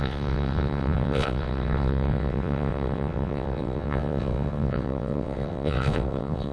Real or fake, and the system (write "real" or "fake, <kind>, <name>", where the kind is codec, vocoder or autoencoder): fake, vocoder, WaveNeXt